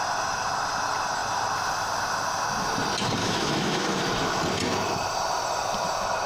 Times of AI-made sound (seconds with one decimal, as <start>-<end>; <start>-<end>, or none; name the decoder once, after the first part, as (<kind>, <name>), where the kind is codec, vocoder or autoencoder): 3.2-4.0 (autoencoder, DAC-VAE)